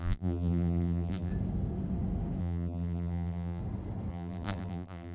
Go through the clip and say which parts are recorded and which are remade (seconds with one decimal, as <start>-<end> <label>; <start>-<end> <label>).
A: 0.0-1.3 remade; 1.3-2.4 recorded; 2.4-3.6 remade; 3.6-4.1 recorded; 4.1-5.1 remade